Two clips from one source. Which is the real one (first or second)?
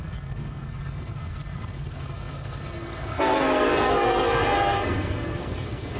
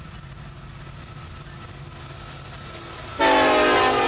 second